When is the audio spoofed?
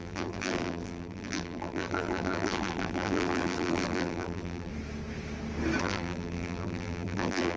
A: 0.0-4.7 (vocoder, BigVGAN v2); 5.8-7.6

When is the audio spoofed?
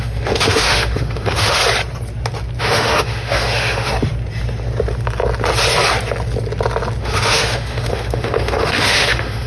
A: 0.0-1.6 (autoencoder, DAC-VAE); 2.6-3.9; 7.0-9.5